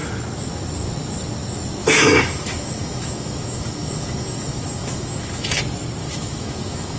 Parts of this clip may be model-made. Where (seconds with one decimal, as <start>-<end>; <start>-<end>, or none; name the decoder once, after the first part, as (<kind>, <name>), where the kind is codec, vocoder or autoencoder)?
1.8-5.6 (autoencoder, DAC-VAE); 6.0-7.0